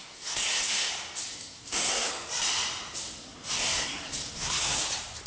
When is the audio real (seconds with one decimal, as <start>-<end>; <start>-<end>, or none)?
0.9-1.3; 2.1-3.2; 4.8-5.3